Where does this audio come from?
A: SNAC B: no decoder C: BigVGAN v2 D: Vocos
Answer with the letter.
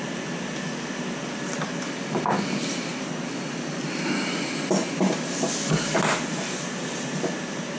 B